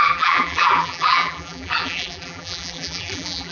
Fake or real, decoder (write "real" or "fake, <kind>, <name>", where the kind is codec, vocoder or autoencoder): fake, vocoder, BigVGAN v2